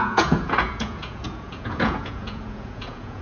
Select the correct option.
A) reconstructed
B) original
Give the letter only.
A